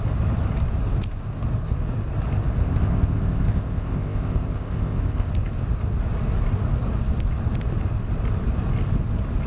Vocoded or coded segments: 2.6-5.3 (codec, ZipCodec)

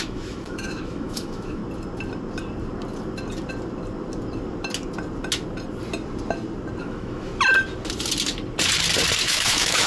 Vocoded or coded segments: 0.0-1.6 (autoencoder, DAC-VAE); 6.8-7.3; 9.2-9.9

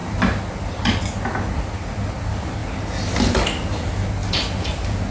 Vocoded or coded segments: none

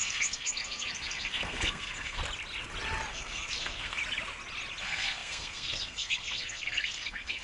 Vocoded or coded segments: 0.0-2.2 (codec, SNAC); 3.1-4.0; 4.8-7.4

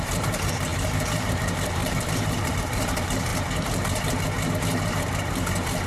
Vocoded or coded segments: 0.0-5.9 (vocoder, BigVGAN v2)

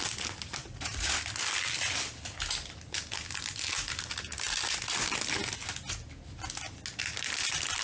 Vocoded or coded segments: 0.6-1.1 (vocoder, Vocos)

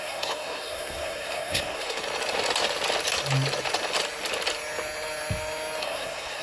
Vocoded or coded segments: 0.0-2.0 (codec, SNAC); 5.8-6.4

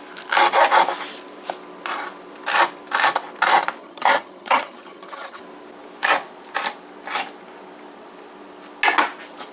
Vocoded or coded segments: 3.8-5.4 (vocoder, HiFi-GAN)